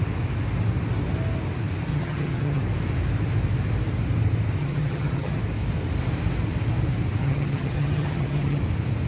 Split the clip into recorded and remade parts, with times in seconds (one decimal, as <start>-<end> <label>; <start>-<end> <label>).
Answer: 0.0-1.9 recorded; 1.9-2.6 remade; 2.6-4.6 recorded; 4.6-5.4 remade; 5.4-7.2 recorded; 7.2-8.6 remade; 8.6-9.1 recorded